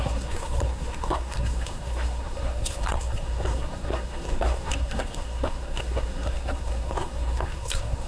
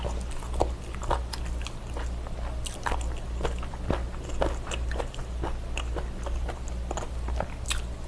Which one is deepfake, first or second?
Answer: first